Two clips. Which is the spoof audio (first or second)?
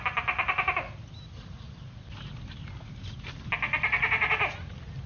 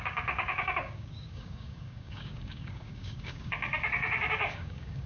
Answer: second